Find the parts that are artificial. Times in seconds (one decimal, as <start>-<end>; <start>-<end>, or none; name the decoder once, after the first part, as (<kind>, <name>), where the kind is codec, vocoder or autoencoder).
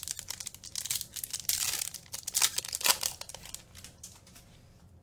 none